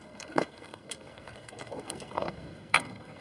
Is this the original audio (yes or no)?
no